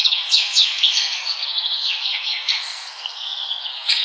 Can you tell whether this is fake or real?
fake